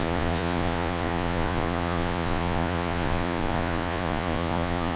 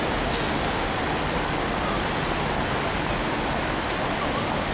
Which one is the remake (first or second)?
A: first